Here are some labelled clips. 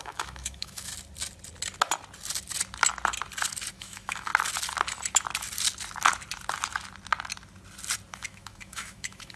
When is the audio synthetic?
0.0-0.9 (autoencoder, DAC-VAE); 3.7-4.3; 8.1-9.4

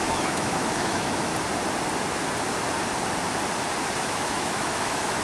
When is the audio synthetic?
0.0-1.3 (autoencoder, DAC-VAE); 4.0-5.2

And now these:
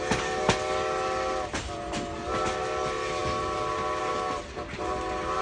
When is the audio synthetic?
none

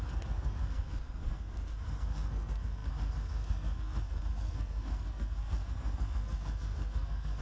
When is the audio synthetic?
0.0-7.4 (codec, SNAC)